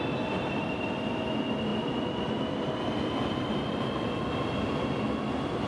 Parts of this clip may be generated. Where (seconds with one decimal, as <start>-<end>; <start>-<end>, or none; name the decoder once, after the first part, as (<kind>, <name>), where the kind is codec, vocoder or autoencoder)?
none